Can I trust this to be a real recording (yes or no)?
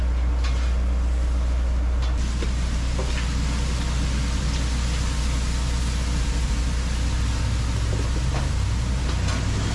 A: yes